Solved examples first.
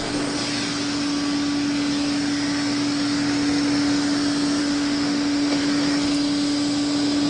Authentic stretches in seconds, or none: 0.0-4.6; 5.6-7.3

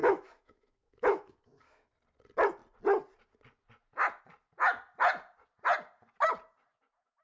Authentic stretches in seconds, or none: 1.9-7.2

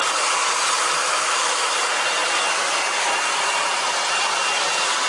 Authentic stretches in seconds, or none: 0.0-1.0; 1.7-5.1